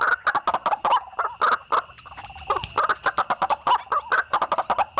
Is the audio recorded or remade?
recorded